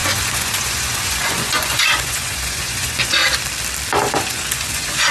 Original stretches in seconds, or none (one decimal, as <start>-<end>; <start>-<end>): 3.2-4.1